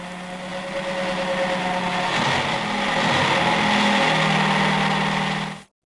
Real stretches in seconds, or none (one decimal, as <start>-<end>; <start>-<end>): 0.0-5.9